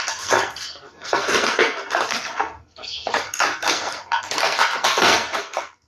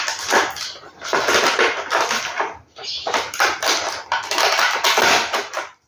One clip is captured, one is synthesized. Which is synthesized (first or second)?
first